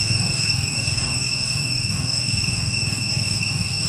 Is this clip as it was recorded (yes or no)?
no